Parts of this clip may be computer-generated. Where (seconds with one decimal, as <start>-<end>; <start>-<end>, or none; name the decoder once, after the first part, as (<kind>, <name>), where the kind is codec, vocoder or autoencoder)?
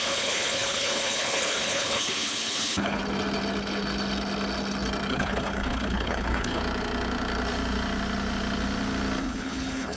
0.0-3.0 (codec, HILCodec); 5.1-6.6; 9.2-10.0